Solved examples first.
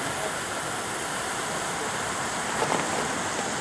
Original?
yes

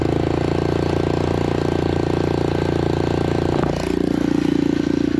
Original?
yes